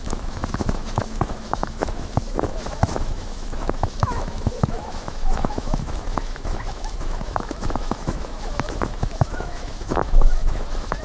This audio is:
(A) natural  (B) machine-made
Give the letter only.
B